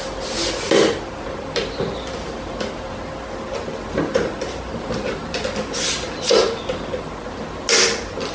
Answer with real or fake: real